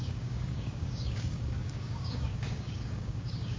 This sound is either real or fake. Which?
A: fake